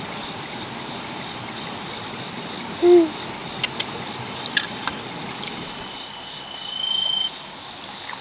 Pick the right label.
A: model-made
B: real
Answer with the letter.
B